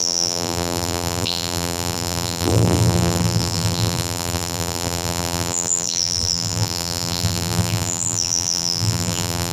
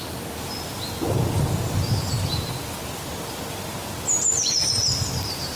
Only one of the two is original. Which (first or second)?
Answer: second